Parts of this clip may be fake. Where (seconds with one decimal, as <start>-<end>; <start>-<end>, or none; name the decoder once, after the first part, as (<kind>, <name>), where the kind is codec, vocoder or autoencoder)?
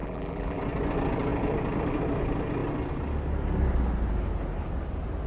0.0-0.6 (vocoder, BigVGAN v2)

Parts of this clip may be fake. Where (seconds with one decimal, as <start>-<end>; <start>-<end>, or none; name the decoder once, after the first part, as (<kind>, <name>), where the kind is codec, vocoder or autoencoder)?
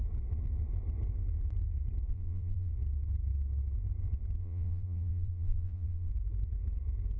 2.1-2.7 (vocoder, BigVGAN v2); 4.4-6.1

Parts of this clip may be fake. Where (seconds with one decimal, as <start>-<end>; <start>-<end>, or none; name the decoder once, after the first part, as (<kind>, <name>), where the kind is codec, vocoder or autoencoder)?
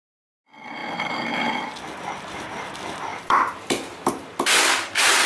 0.8-1.6 (vocoder, BigVGAN v2); 3.1-4.1